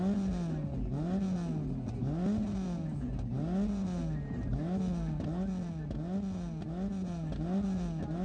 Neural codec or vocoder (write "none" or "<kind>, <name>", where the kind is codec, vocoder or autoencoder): none